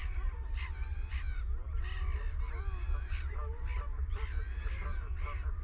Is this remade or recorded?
recorded